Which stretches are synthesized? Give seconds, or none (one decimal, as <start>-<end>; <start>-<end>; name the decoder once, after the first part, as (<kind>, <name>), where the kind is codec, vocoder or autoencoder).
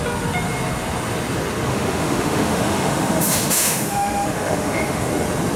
1.7-5.1 (autoencoder, DAC-VAE)